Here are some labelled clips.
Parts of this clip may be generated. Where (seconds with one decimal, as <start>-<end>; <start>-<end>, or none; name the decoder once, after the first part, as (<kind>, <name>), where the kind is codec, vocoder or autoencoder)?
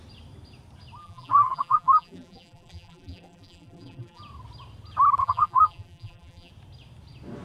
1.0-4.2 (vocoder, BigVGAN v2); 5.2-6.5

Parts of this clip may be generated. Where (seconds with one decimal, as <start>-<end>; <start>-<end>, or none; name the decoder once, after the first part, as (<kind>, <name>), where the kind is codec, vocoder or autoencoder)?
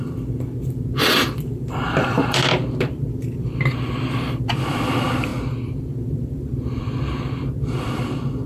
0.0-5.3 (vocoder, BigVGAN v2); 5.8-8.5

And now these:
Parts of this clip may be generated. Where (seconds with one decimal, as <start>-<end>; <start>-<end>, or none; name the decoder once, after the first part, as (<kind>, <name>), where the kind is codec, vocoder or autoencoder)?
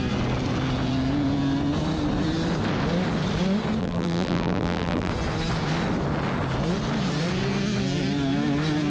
3.8-5.1 (vocoder, BigVGAN v2)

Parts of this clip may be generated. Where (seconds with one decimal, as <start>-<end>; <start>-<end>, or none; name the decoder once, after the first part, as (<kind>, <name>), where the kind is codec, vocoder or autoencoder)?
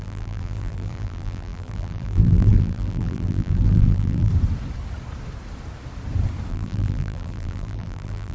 0.0-4.3 (vocoder, BigVGAN v2); 6.5-8.3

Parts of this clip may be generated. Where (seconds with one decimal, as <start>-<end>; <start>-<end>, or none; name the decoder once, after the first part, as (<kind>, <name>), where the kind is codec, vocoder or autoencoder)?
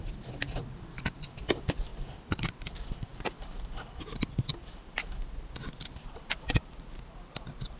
none